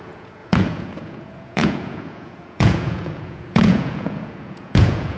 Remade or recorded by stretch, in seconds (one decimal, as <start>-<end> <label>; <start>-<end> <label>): 0.0-5.2 remade